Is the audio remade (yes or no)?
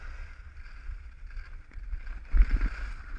no